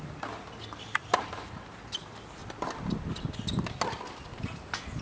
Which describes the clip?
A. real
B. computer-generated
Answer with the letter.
A